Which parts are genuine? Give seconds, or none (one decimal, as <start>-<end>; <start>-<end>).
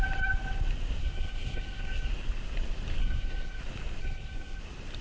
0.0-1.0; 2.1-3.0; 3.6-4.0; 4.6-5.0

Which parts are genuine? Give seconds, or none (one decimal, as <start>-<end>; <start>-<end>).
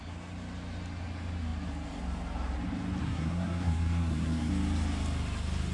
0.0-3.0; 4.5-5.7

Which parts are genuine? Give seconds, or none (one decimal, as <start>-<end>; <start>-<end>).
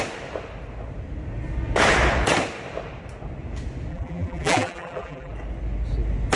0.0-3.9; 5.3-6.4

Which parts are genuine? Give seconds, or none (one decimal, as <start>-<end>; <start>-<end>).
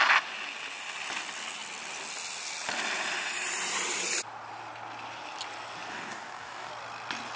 0.0-5.9; 6.7-7.4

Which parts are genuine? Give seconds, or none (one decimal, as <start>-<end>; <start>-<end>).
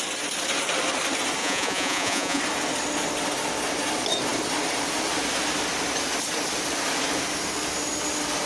0.0-1.4; 2.4-8.5